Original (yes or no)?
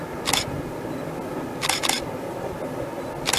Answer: yes